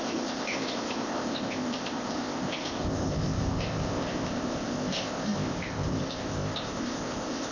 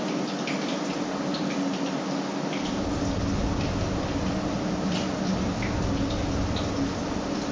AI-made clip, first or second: first